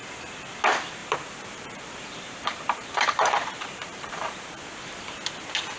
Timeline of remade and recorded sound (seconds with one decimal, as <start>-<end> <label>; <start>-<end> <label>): 0.0-1.0 recorded; 1.0-4.5 remade; 4.5-5.8 recorded